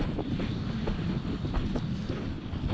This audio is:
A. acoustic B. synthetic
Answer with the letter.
A